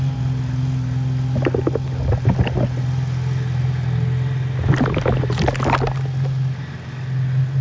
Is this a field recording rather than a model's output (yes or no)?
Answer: yes